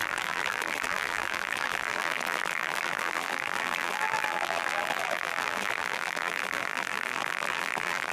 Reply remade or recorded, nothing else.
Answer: remade